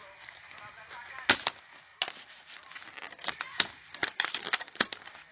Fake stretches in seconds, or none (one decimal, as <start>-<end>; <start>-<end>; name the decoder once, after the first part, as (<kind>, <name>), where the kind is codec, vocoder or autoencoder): none